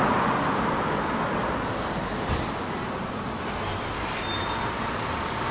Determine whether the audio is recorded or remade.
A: recorded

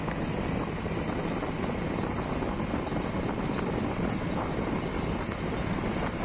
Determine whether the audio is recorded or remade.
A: recorded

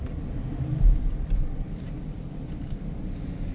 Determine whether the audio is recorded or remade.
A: recorded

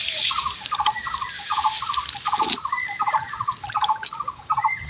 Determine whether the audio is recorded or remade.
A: recorded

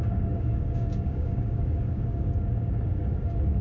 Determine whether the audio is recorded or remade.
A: remade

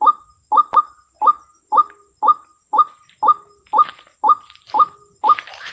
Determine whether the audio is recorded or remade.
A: recorded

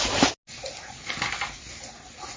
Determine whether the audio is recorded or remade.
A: recorded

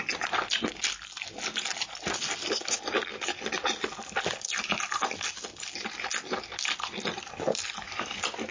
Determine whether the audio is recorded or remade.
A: recorded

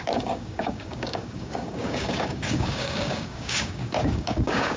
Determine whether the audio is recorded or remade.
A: remade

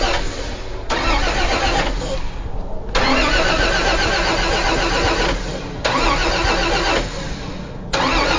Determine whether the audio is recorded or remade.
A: recorded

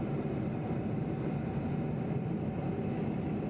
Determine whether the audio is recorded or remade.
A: recorded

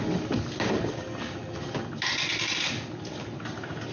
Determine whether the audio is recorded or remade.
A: recorded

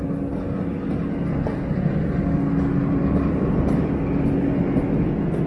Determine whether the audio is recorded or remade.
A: recorded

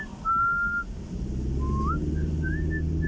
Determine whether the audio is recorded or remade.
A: recorded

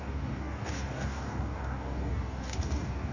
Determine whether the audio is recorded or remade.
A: remade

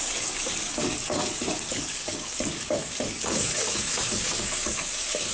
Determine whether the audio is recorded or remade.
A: remade